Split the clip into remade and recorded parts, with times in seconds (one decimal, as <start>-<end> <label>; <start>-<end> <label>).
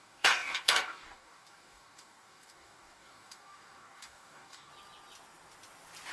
0.0-4.7 remade; 4.7-6.1 recorded